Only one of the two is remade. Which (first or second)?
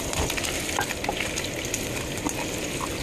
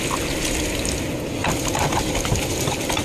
first